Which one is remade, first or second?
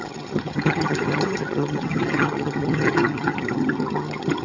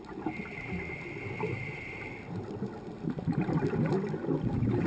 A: first